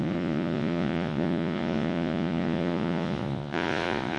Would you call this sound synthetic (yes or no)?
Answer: yes